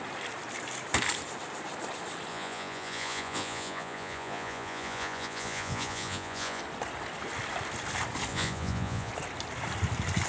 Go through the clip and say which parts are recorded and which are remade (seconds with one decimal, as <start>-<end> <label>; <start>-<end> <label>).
0.0-2.3 recorded; 2.3-6.6 remade; 6.6-8.3 recorded; 8.3-9.1 remade; 9.1-10.3 recorded